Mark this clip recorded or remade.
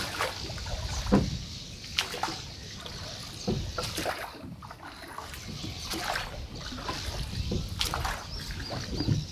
recorded